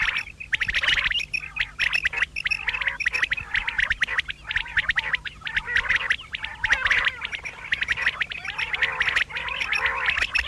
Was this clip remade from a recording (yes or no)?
no